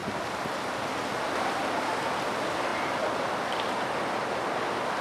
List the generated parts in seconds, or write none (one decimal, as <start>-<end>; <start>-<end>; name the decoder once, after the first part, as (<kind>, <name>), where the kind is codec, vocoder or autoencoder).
none